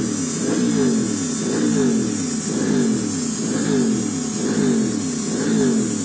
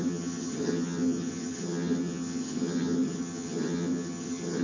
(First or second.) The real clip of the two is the first